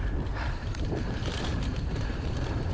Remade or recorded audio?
remade